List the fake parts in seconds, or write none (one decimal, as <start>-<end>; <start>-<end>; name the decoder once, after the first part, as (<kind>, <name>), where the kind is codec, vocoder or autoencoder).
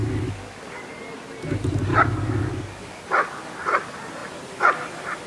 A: 0.0-0.9 (codec, DAC); 1.9-3.0